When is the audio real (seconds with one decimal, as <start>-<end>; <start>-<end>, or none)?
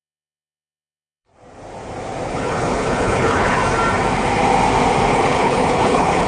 1.3-2.3; 3.6-5.1